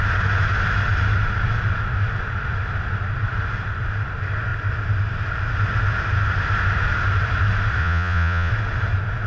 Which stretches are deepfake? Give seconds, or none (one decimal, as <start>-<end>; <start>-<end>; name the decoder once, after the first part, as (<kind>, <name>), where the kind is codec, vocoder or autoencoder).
7.8-8.5 (vocoder, Vocos)

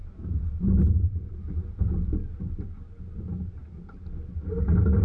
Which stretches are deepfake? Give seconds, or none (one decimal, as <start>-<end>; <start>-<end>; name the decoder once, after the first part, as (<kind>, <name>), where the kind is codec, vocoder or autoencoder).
none

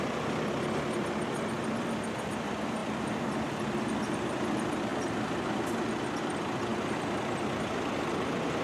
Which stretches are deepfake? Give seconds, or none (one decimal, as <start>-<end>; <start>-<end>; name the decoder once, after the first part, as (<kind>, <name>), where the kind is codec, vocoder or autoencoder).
0.0-4.9 (vocoder, BigVGAN v2); 6.2-8.6

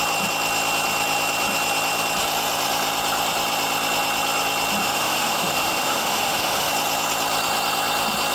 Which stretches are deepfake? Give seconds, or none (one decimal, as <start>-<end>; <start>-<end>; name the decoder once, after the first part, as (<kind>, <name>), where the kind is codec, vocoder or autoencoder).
4.8-6.7 (autoencoder, DAC-VAE)

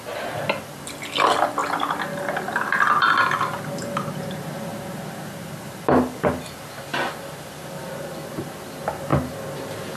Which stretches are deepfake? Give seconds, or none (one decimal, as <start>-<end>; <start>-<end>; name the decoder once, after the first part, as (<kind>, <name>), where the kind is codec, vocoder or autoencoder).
none

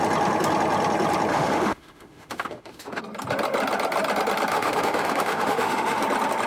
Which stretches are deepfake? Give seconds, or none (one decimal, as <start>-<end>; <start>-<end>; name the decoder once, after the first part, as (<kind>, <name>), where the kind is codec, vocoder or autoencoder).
1.3-3.0 (autoencoder, DAC-VAE); 4.5-6.0

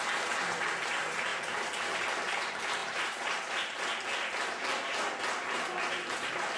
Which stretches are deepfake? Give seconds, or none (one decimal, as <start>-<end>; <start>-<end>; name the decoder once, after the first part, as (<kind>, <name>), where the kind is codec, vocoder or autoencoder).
1.3-1.8 (vocoder, BigVGAN v2); 2.8-3.5